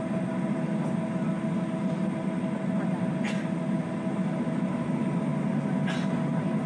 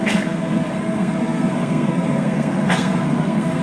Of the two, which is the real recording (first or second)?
first